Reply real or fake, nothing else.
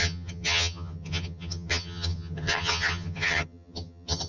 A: fake